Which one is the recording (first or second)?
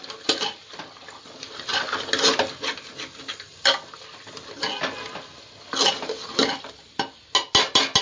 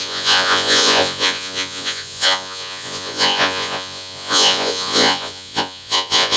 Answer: first